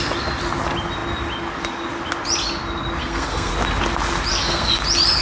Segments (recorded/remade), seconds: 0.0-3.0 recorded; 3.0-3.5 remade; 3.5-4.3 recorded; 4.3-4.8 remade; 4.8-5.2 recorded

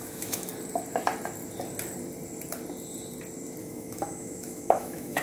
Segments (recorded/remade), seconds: 0.0-0.5 remade; 0.5-3.6 recorded; 3.6-5.2 remade

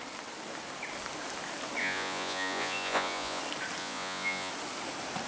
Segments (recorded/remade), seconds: 0.0-1.8 recorded; 1.8-3.4 remade; 3.4-3.8 recorded; 3.8-4.5 remade; 4.5-5.3 recorded

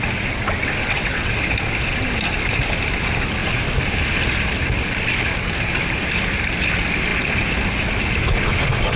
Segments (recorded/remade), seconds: 0.0-0.8 recorded; 0.8-1.3 remade; 1.3-9.0 recorded

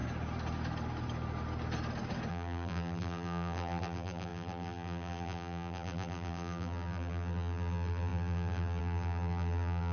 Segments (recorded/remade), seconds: 0.0-2.3 recorded; 2.3-9.9 remade

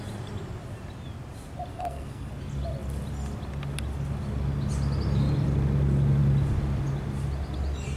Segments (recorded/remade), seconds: 0.0-1.7 recorded; 1.7-2.3 remade; 2.3-8.0 recorded

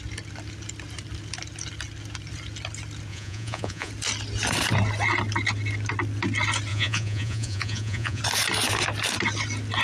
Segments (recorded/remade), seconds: 0.0-3.1 recorded; 3.1-3.9 remade; 3.9-6.7 recorded; 6.7-8.2 remade; 8.2-9.8 recorded